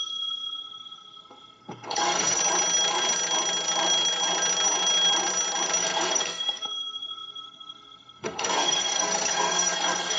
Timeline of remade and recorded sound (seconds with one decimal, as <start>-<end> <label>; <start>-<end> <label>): 0.0-2.4 remade; 2.4-5.8 recorded; 5.8-10.2 remade